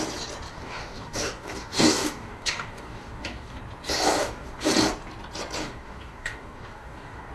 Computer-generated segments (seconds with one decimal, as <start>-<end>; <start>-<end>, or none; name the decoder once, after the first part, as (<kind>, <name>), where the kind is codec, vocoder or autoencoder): 0.5-3.6 (codec, DAC); 4.2-4.7; 5.6-7.3